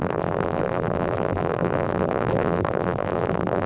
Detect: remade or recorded remade